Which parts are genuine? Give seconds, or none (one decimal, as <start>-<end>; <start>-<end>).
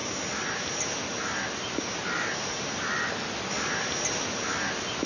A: 0.0-5.1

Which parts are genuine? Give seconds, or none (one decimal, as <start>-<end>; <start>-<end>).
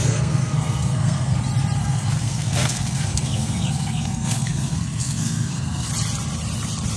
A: 1.4-1.8; 5.9-7.0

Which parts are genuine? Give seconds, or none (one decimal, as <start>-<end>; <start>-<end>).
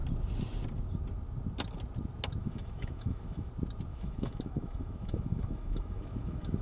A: 0.0-2.4; 3.5-3.9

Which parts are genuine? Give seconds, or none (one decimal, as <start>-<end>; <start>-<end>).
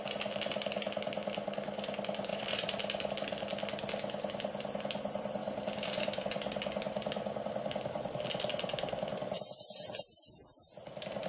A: 0.0-2.3; 3.1-5.4; 6.2-11.3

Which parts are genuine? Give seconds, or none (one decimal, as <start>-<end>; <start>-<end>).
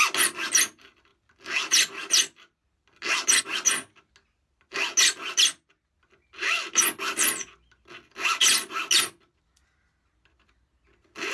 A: 0.0-11.3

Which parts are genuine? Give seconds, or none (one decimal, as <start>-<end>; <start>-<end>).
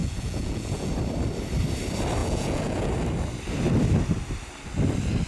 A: 0.9-2.2; 2.9-5.3